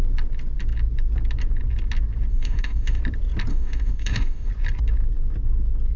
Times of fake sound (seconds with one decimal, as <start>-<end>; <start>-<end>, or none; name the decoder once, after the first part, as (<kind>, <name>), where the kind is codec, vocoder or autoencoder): 2.3-3.0 (autoencoder, DAC-VAE); 3.5-4.5